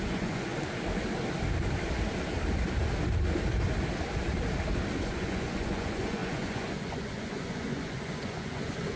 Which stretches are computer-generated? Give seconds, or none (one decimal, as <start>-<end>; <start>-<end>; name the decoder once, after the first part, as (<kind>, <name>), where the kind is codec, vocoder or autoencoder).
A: 0.0-0.5 (vocoder, Vocos); 5.0-9.0